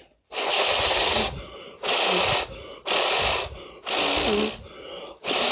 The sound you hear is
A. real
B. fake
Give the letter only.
A